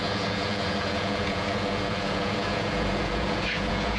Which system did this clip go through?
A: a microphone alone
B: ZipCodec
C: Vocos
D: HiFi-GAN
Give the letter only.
C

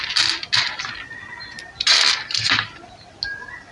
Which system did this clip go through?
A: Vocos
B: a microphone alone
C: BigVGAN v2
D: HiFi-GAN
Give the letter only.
B